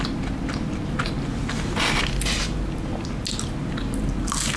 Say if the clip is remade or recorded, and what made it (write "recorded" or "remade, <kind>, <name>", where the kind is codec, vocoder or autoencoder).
recorded